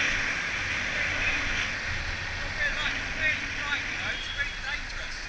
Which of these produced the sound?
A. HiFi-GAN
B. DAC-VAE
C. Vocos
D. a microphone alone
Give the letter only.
D